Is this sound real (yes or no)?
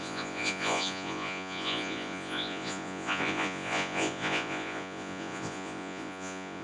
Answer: no